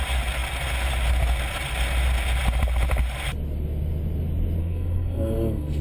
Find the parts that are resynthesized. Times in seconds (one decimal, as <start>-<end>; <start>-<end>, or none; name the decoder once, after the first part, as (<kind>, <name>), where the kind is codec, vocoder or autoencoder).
4.6-5.8 (codec, SNAC)